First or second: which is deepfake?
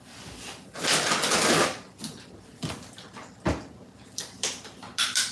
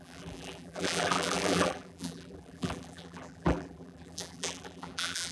second